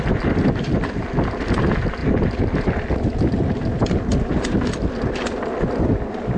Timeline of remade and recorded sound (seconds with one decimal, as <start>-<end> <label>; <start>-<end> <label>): 0.0-6.4 recorded